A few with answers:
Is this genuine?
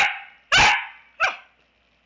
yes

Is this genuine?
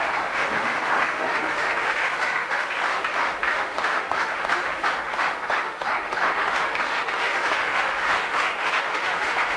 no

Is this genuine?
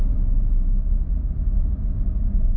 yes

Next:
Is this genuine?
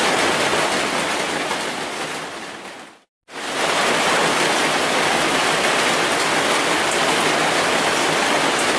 yes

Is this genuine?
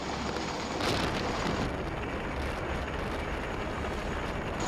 yes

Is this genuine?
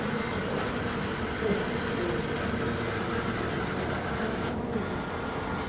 yes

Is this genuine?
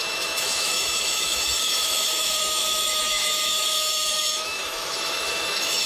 no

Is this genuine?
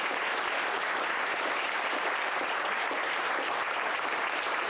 yes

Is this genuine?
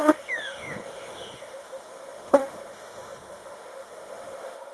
no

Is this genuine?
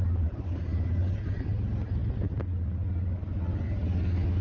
yes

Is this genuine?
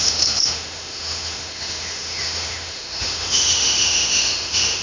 no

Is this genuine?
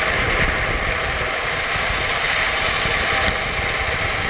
yes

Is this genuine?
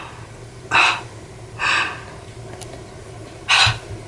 yes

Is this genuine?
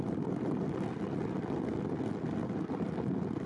yes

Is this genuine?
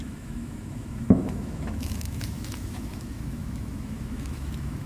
no